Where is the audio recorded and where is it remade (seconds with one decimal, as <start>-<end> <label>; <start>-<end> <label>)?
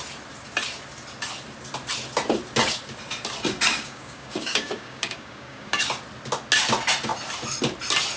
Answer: 0.0-3.7 recorded; 3.7-5.8 remade; 5.8-8.2 recorded